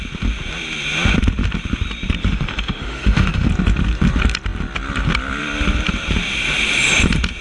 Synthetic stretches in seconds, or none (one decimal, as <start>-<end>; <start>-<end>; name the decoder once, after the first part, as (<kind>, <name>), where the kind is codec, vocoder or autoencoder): 2.2-3.5 (autoencoder, DAC-VAE)